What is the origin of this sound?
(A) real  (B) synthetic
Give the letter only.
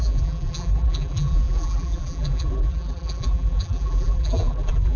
B